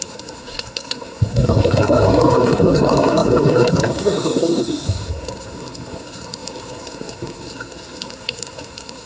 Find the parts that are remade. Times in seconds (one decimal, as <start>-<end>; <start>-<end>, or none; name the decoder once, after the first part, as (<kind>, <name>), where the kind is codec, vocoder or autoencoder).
0.0-9.1 (codec, SNAC)